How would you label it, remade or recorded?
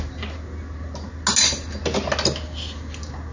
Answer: recorded